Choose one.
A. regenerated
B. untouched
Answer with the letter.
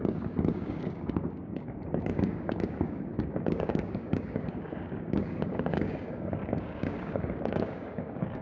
A